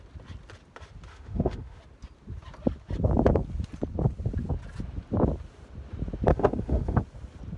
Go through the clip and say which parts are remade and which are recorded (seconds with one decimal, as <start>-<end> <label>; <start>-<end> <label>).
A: 0.0-1.1 recorded; 1.1-1.8 remade; 1.8-6.3 recorded; 6.3-7.0 remade; 7.0-7.6 recorded